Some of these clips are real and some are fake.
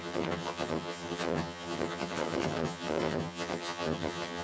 fake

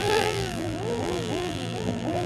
fake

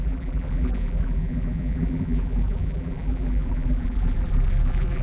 fake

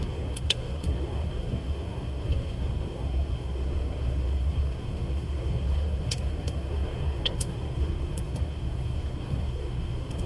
fake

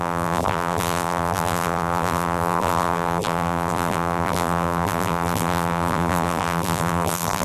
fake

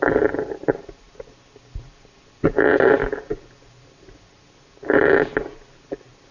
real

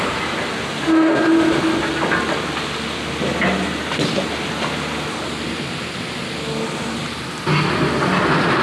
real